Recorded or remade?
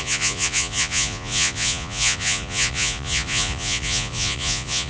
remade